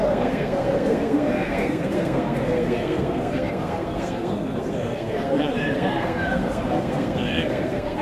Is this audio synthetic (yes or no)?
yes